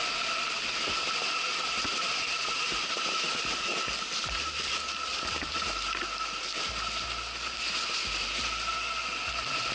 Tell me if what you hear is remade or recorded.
recorded